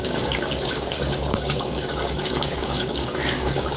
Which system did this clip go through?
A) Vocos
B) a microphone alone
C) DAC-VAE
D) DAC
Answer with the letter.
D